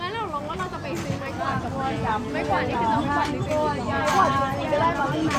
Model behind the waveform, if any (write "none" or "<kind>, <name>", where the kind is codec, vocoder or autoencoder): none